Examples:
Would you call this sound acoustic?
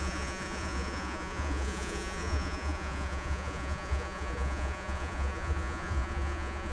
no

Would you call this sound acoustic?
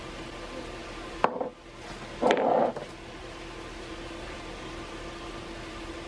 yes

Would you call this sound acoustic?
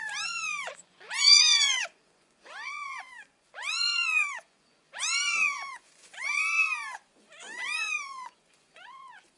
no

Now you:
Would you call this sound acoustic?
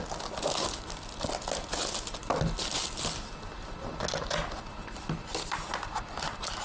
yes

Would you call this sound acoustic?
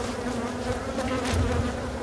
yes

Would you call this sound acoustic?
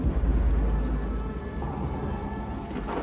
yes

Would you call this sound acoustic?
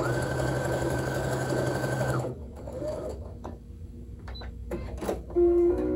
no